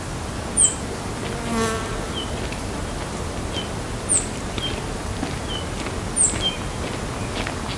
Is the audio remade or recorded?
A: recorded